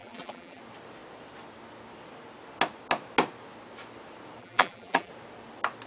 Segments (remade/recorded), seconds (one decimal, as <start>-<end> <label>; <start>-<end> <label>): 0.0-0.6 remade; 0.6-4.4 recorded; 4.4-5.1 remade; 5.1-5.9 recorded